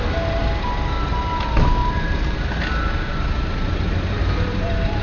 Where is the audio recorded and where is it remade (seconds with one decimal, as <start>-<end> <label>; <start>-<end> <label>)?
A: 0.0-1.8 recorded; 1.8-5.0 remade